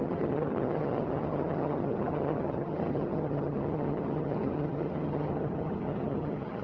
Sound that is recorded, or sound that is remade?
remade